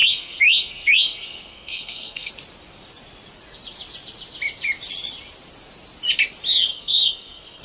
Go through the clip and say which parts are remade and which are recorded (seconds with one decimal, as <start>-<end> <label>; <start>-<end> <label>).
0.0-2.3 remade; 2.3-6.7 recorded; 6.7-7.6 remade